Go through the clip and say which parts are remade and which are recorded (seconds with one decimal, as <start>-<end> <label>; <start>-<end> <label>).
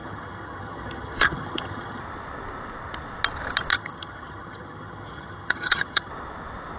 0.0-2.0 remade; 2.0-3.7 recorded; 3.7-6.1 remade; 6.1-6.8 recorded